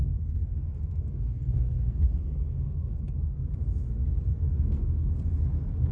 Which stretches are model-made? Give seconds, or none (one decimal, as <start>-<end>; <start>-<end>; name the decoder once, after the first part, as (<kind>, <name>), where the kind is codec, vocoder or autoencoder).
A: 0.0-3.5 (codec, SNAC); 4.3-5.1